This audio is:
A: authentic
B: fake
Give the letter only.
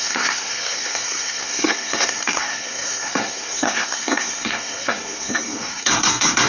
B